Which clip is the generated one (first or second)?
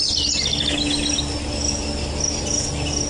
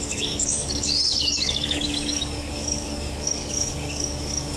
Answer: second